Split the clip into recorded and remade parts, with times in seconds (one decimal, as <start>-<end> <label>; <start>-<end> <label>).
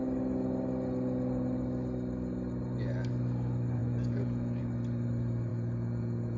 0.0-3.8 recorded; 3.8-4.6 remade; 4.6-5.5 recorded; 5.5-6.4 remade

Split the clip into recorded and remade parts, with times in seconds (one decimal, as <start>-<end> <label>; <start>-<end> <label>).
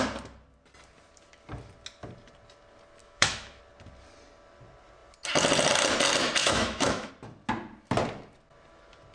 0.0-3.0 recorded; 3.0-3.6 remade; 3.6-6.4 recorded; 6.4-7.1 remade; 7.1-9.1 recorded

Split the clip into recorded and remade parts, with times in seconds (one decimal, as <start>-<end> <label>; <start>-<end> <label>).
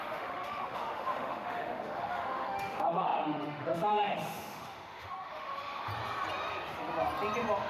0.0-5.9 remade; 5.9-7.7 recorded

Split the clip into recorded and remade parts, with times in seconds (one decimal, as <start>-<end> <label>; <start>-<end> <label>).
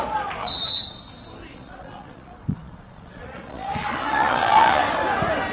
0.0-0.4 recorded; 0.4-1.0 remade; 1.0-1.5 recorded; 1.5-4.8 remade; 4.8-5.5 recorded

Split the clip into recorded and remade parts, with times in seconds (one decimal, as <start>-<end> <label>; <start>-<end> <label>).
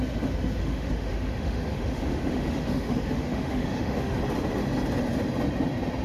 0.0-0.6 recorded; 0.6-4.2 remade; 4.2-6.0 recorded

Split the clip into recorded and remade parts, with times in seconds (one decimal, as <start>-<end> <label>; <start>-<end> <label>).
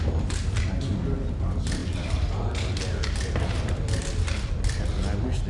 0.0-5.5 recorded